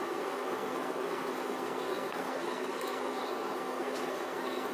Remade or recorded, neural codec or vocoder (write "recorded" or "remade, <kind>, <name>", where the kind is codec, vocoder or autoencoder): remade, codec, SNAC